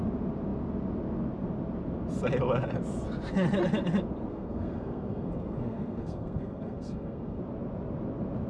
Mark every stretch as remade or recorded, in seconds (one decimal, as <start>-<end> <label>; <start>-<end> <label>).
0.0-4.3 recorded; 4.3-7.4 remade; 7.4-8.5 recorded